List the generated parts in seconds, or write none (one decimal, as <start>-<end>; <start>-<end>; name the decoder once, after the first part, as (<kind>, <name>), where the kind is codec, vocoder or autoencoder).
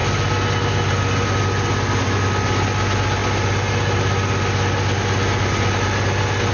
none